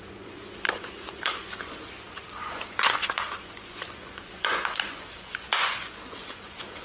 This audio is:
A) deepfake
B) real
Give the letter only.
A